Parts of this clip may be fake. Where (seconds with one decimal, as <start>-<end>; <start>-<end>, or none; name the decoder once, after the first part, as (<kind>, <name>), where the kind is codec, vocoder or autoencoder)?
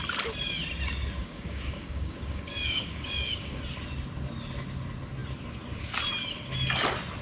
1.2-3.6 (codec, DAC)